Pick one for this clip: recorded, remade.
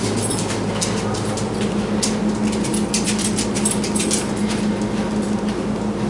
recorded